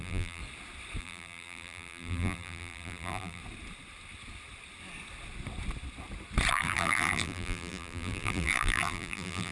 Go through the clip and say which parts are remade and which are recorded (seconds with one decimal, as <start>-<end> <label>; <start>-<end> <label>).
0.0-0.4 remade; 0.4-1.0 recorded; 1.0-3.4 remade; 3.4-6.5 recorded; 6.5-9.5 remade